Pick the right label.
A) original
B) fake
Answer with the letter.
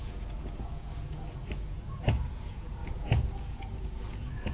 B